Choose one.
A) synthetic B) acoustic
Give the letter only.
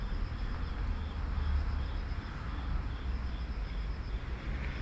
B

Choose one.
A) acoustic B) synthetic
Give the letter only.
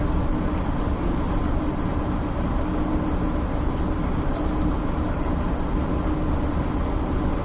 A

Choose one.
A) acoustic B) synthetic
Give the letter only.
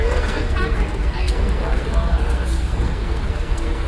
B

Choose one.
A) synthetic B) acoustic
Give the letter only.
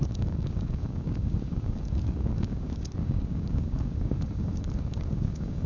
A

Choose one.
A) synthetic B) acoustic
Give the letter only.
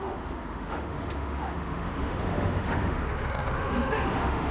A